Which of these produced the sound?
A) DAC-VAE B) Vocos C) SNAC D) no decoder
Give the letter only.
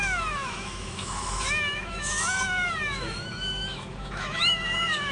A